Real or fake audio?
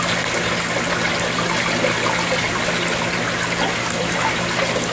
real